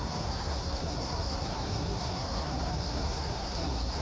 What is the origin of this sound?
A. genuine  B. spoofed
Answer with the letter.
B